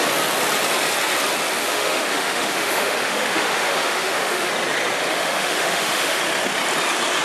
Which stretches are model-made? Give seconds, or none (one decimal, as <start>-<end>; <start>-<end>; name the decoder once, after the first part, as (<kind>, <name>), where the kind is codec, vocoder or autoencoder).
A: 1.6-4.5 (autoencoder, DAC-VAE); 5.1-6.2